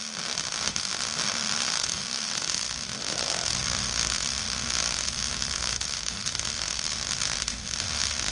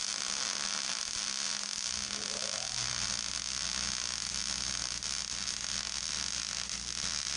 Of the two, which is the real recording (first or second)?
second